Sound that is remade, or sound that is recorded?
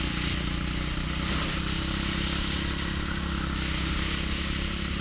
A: recorded